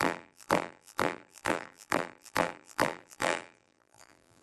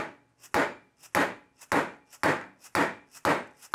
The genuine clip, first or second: second